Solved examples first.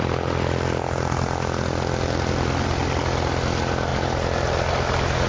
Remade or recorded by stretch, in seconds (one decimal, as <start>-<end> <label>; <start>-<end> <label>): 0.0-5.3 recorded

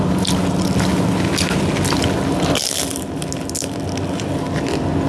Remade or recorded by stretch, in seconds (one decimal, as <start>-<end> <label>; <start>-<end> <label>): 0.0-5.1 recorded

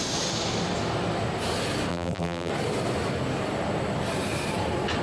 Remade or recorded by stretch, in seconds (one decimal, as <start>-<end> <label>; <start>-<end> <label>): 0.0-1.9 recorded; 1.9-2.5 remade; 2.5-5.0 recorded

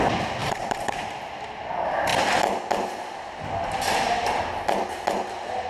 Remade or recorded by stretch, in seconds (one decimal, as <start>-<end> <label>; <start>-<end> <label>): 0.0-0.4 recorded; 0.4-1.2 remade; 1.2-5.7 recorded

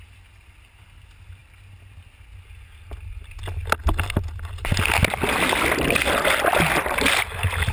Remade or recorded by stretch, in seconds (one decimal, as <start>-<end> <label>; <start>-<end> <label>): 0.0-7.7 recorded

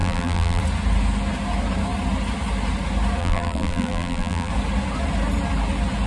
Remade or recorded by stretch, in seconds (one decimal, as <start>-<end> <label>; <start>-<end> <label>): 0.0-0.6 remade; 0.6-3.2 recorded; 3.2-4.5 remade; 4.5-6.1 recorded

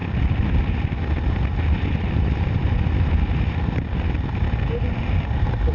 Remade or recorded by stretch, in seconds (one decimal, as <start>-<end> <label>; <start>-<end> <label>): 0.0-5.7 recorded

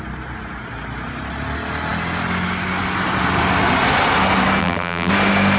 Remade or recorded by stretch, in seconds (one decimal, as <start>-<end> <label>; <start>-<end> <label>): 0.0-4.6 recorded; 4.6-5.1 remade; 5.1-5.6 recorded